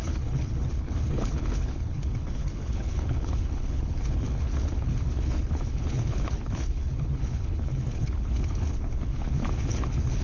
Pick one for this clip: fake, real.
fake